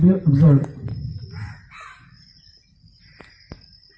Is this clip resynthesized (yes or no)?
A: yes